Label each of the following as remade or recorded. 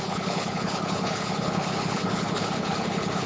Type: remade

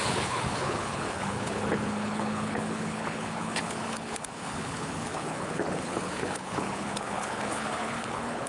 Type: remade